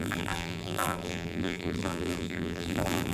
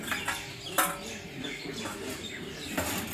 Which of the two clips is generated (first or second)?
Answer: first